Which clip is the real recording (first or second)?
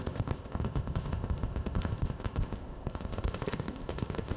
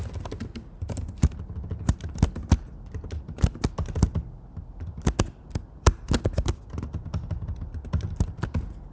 second